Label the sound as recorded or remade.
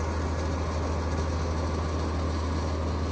recorded